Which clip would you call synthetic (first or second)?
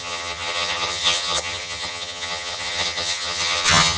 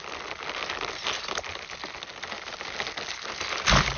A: first